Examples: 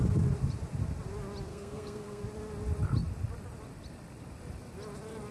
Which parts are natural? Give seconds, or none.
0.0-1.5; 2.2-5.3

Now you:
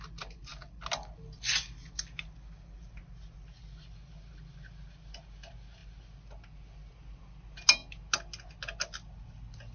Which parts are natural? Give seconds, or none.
0.0-9.7

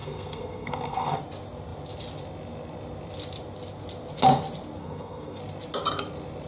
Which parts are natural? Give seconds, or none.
1.2-4.8; 5.4-6.5

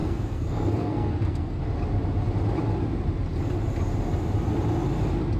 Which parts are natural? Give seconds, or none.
1.6-5.4

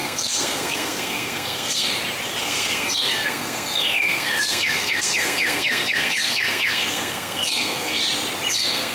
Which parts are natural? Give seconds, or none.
1.9-2.4; 8.0-8.5

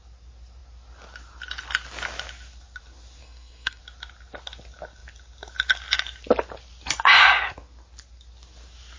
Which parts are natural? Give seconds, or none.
0.0-3.2; 3.8-9.0

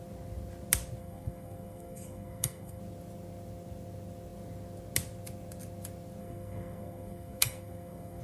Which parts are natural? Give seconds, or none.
0.0-1.0; 2.8-6.2

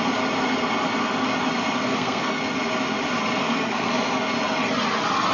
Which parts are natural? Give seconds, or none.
0.0-1.8; 2.4-3.4; 3.9-5.3